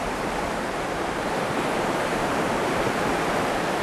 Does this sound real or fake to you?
fake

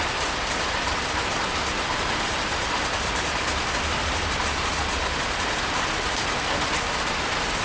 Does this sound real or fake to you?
real